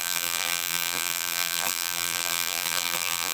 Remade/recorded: remade